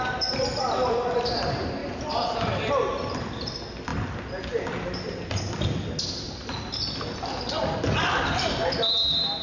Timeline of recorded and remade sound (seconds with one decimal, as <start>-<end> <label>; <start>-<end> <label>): 0.0-9.4 recorded